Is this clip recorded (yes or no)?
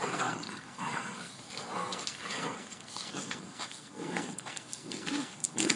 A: no